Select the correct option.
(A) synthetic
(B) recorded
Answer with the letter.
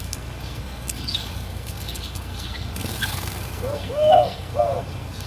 A